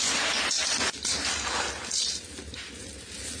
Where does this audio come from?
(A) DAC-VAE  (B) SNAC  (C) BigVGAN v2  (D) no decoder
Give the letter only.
D